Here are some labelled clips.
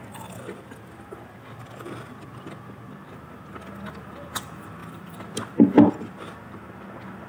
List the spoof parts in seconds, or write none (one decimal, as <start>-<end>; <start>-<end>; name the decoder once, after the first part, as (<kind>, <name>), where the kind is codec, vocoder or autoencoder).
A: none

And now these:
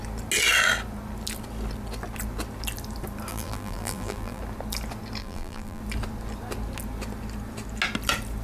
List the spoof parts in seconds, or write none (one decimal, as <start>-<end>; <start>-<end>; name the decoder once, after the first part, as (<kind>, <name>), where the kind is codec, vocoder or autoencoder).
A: 3.3-4.4 (vocoder, BigVGAN v2); 5.2-5.8

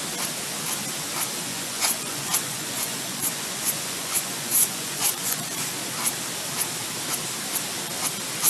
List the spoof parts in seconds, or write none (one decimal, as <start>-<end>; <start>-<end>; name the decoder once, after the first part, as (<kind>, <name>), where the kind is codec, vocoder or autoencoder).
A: 1.5-5.7 (vocoder, Vocos)

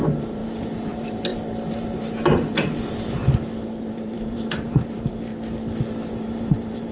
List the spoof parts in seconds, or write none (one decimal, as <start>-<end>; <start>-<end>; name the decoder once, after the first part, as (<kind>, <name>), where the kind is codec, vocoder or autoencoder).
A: 0.0-0.4 (vocoder, BigVGAN v2); 0.9-3.2; 3.8-5.3; 6.1-6.9

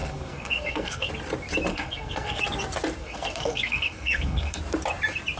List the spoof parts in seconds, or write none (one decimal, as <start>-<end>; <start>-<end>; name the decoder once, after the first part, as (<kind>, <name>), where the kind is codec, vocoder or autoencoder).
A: 0.0-1.1 (codec, SNAC); 1.7-2.4; 3.0-4.6

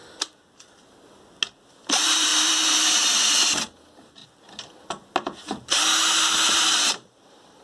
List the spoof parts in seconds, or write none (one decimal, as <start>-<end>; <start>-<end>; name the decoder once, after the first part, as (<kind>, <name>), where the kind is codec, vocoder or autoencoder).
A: 1.7-4.2 (vocoder, BigVGAN v2); 6.5-7.6

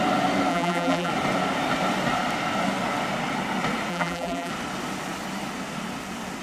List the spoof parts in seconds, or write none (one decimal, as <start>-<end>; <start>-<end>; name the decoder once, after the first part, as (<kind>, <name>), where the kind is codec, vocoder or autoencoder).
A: 0.5-1.1 (vocoder, BigVGAN v2); 3.9-4.5

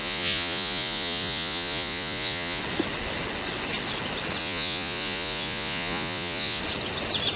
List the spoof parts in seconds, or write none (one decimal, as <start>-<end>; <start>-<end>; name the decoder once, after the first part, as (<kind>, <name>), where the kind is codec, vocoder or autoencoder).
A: 0.0-2.6 (vocoder, Vocos); 4.4-6.6